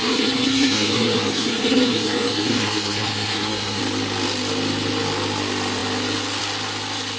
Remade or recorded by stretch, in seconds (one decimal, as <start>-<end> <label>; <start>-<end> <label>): 0.0-3.8 remade; 3.8-7.2 recorded